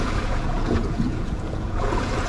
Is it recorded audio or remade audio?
remade